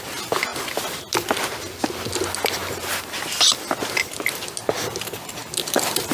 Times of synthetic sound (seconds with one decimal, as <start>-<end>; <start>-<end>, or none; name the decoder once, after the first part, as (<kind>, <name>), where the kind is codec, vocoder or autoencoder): none